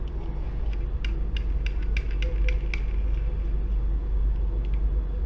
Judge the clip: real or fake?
real